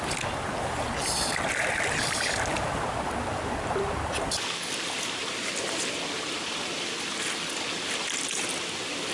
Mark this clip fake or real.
real